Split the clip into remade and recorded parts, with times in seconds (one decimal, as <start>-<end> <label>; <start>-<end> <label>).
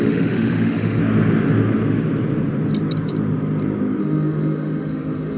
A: 0.0-1.0 remade; 1.0-4.0 recorded; 4.0-5.4 remade